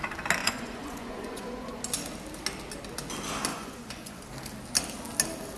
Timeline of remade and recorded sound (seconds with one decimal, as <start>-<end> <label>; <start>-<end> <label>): 0.0-0.4 recorded; 0.4-1.8 remade; 1.8-3.5 recorded; 3.5-4.2 remade; 4.2-5.6 recorded